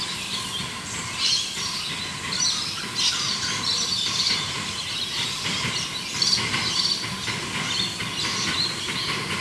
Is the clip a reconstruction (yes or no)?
yes